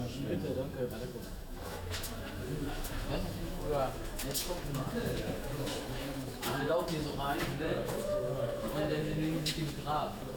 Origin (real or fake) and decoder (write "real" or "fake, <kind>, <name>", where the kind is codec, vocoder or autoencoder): fake, autoencoder, DAC-VAE